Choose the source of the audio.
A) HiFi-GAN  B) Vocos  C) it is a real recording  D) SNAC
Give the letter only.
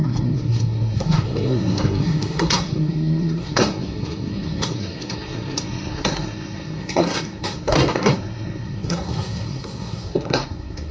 D